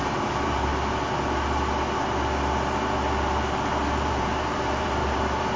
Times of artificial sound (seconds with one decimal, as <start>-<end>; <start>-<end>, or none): 0.0-0.7; 4.1-5.6